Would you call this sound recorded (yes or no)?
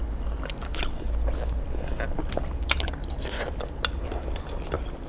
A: yes